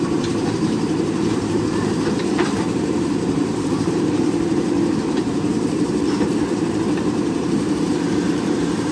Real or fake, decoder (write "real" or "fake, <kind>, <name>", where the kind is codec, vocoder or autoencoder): fake, vocoder, BigVGAN v2